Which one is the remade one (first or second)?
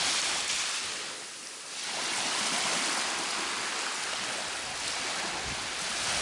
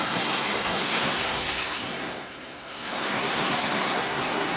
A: second